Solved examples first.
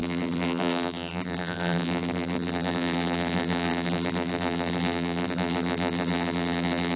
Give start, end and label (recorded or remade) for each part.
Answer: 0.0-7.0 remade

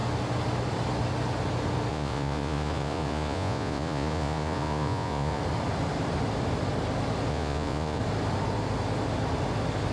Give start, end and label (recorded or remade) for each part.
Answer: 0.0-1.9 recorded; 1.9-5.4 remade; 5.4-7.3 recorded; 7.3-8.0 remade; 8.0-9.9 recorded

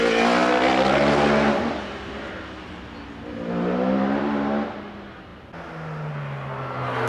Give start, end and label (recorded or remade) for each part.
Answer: 0.0-7.1 recorded

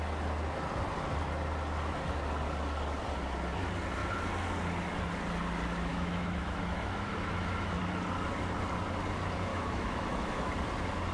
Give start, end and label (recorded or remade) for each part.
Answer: 0.0-5.9 recorded; 5.9-7.8 remade; 7.8-9.5 recorded; 9.5-10.5 remade; 10.5-11.1 recorded

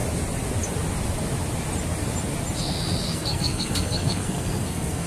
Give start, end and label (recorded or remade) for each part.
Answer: 0.0-3.0 recorded; 3.0-5.1 remade